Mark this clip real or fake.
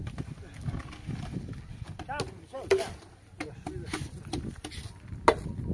real